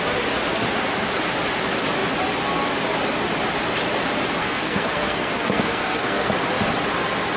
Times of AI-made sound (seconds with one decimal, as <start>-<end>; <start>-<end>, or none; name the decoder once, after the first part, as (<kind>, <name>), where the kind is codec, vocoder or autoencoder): 4.4-6.3 (codec, SNAC)